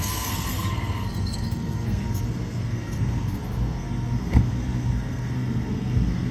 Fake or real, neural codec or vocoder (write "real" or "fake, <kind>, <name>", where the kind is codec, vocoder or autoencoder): fake, codec, SNAC